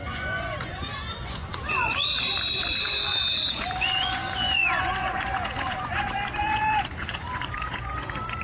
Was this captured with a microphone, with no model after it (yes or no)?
no